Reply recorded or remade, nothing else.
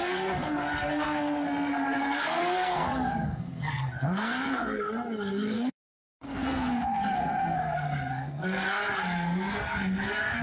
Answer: remade